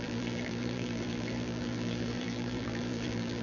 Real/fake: fake